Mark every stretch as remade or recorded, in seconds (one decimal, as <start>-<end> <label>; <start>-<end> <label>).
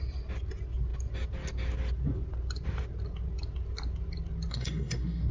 0.0-4.5 recorded; 4.5-5.3 remade